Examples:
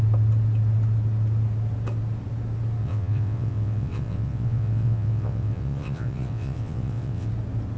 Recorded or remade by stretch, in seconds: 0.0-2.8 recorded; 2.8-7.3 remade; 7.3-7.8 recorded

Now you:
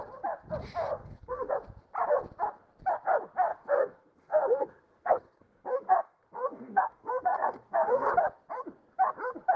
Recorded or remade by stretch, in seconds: 0.0-0.9 recorded; 0.9-1.5 remade; 1.5-3.5 recorded; 3.5-8.1 remade; 8.1-9.6 recorded